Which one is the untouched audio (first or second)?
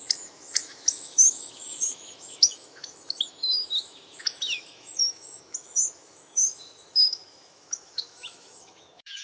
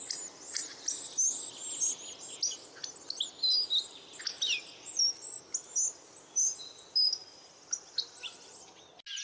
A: second